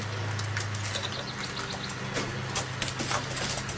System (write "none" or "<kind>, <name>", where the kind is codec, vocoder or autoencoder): none